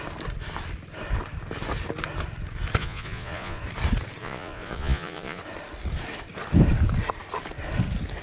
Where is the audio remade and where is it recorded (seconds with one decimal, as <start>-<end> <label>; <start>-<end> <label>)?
0.0-2.8 recorded; 2.8-3.6 remade; 3.6-4.2 recorded; 4.2-5.4 remade; 5.4-8.2 recorded